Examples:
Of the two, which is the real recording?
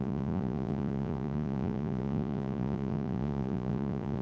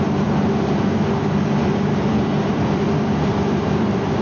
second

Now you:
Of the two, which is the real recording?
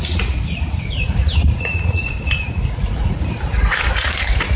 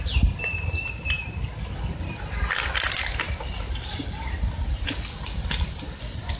second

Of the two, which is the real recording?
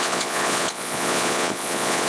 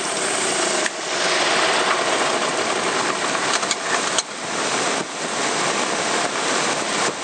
second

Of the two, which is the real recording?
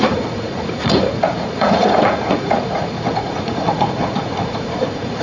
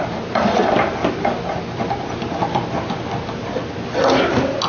second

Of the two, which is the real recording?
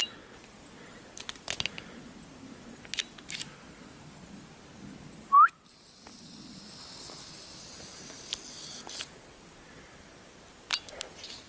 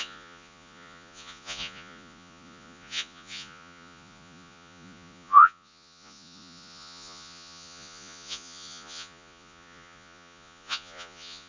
first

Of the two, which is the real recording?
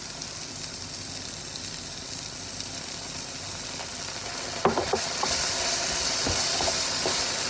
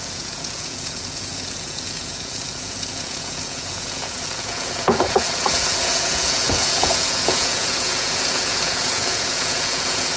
first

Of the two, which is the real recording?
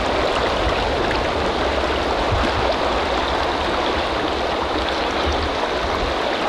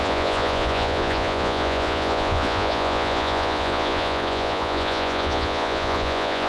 first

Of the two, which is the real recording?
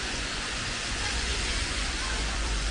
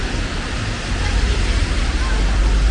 second